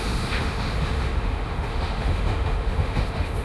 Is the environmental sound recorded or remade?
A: remade